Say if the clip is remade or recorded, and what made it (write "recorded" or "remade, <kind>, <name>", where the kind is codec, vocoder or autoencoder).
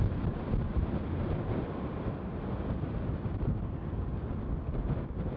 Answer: recorded